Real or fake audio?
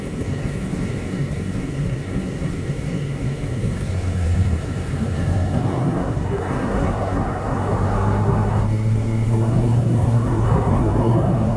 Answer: fake